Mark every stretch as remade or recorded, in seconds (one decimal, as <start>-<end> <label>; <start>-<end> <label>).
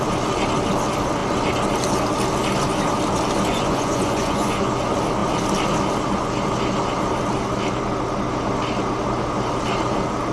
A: 0.0-3.5 recorded; 3.5-4.7 remade; 4.7-10.3 recorded